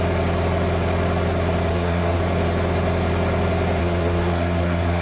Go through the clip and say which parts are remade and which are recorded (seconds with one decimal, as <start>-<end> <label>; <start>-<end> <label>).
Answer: 0.0-1.7 recorded; 1.7-2.2 remade; 2.2-3.8 recorded; 3.8-5.0 remade

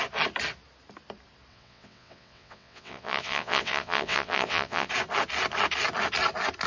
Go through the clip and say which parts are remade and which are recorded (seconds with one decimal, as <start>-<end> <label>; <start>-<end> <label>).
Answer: 0.0-1.5 recorded; 1.5-4.9 remade; 4.9-6.7 recorded

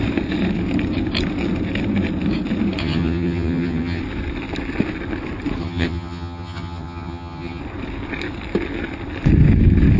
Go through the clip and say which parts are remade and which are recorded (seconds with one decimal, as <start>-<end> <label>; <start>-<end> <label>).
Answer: 0.0-2.8 recorded; 2.8-4.0 remade; 4.0-5.6 recorded; 5.6-7.6 remade; 7.6-10.0 recorded

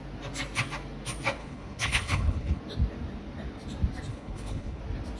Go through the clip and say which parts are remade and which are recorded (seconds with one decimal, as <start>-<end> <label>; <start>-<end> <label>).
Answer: 0.0-1.4 recorded; 1.4-2.6 remade; 2.6-4.1 recorded; 4.1-4.8 remade; 4.8-5.2 recorded

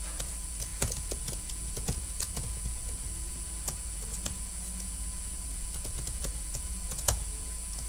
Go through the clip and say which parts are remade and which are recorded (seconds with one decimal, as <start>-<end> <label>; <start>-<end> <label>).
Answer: 0.0-7.9 remade